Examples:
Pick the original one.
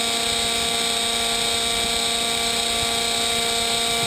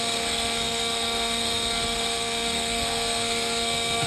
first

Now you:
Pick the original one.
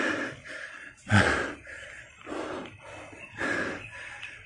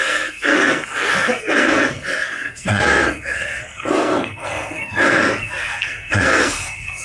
first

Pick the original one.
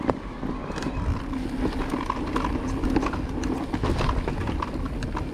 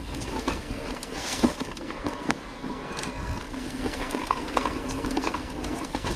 first